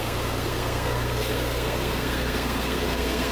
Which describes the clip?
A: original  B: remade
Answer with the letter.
B